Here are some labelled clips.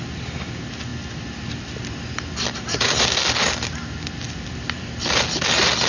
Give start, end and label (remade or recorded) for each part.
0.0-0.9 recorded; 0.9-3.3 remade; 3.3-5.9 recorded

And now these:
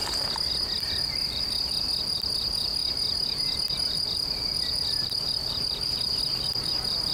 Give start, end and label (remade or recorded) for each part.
0.0-0.8 recorded; 0.8-2.8 remade; 2.8-3.9 recorded; 3.9-7.1 remade

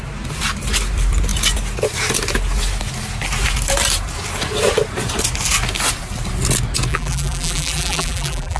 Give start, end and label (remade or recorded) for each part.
0.0-6.9 recorded; 6.9-8.6 remade